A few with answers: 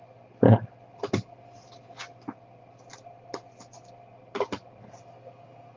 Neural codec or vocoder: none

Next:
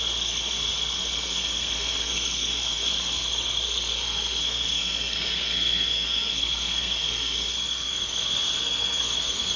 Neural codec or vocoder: codec, SNAC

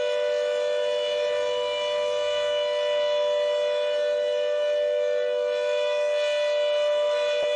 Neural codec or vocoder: none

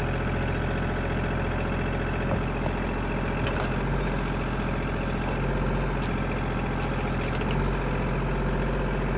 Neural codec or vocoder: none